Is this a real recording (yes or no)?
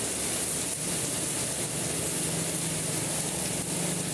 yes